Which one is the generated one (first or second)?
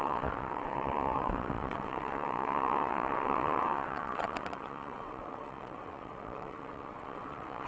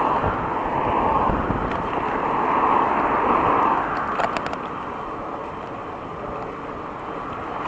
first